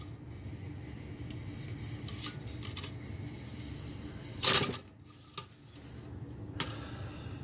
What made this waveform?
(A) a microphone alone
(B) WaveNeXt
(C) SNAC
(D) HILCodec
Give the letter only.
A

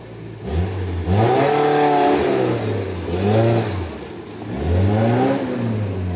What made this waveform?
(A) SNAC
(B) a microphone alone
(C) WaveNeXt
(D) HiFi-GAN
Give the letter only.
B